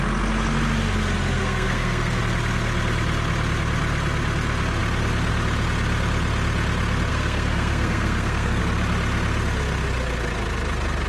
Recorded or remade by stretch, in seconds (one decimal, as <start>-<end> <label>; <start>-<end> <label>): 0.0-1.4 recorded; 1.4-2.2 remade; 2.2-7.1 recorded; 7.1-8.6 remade; 8.6-11.1 recorded